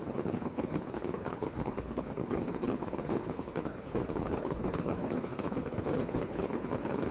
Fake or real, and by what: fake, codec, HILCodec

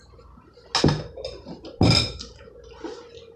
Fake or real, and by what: real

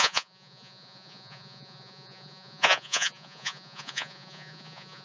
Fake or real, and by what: fake, vocoder, Vocos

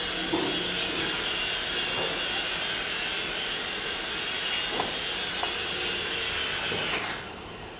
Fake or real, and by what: real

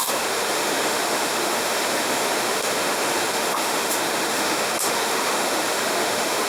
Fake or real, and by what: fake, autoencoder, DAC-VAE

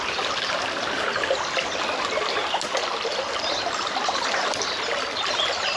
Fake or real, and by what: real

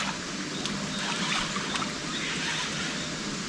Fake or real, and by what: real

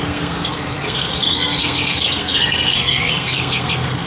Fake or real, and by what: fake, codec, SNAC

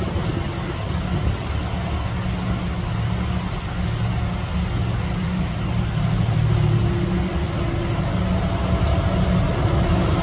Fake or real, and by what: real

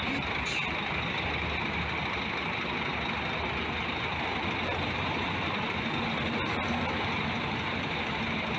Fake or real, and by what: real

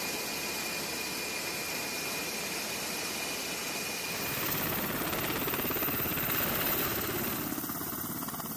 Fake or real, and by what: real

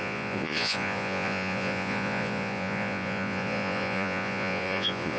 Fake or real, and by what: fake, vocoder, Vocos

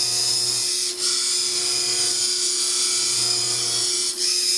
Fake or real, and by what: real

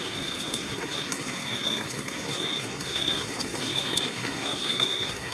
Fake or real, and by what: fake, codec, SNAC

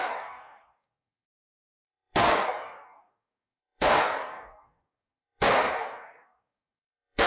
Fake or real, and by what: fake, codec, DAC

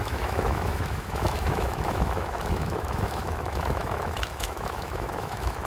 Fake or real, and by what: fake, autoencoder, DAC-VAE